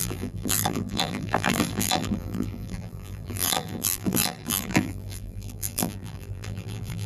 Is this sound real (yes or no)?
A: no